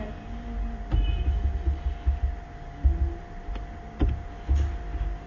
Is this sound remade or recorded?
recorded